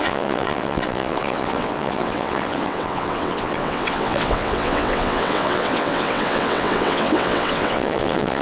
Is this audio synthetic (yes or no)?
yes